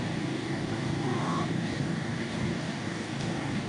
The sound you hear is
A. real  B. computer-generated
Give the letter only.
B